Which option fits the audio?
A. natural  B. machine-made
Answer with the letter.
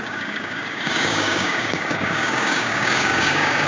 B